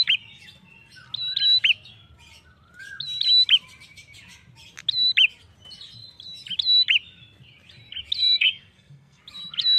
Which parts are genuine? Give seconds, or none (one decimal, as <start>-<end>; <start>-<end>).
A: 0.0-8.2; 9.2-9.8